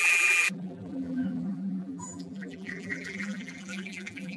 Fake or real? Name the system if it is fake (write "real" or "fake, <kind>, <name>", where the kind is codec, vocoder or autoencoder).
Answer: fake, vocoder, BigVGAN v2